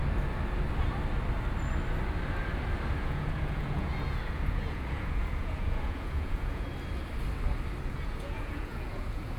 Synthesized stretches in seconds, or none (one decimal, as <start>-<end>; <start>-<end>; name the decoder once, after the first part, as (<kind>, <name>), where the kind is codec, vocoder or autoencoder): 3.0-6.7 (vocoder, Vocos); 7.8-9.4